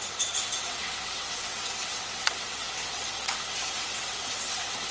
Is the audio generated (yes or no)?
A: yes